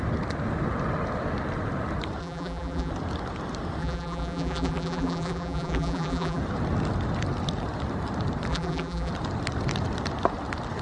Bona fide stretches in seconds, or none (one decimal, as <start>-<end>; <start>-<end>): 0.0-2.2; 2.9-3.8; 6.4-8.5; 9.1-10.8